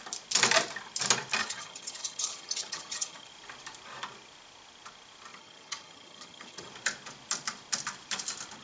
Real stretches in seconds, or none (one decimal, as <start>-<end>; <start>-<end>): 0.0-1.4; 3.3-5.3; 6.7-8.6